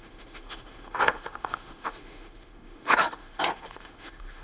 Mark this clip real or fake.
fake